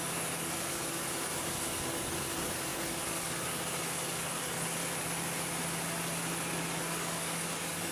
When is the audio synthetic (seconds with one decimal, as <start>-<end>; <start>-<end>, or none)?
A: 0.0-4.8; 6.8-7.9